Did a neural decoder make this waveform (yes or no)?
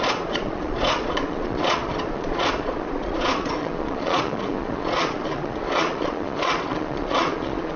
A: yes